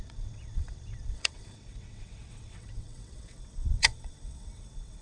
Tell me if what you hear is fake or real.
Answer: fake